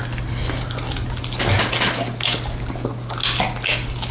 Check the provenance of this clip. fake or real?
real